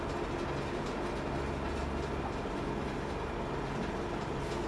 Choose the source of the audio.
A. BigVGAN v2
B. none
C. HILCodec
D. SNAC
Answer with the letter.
B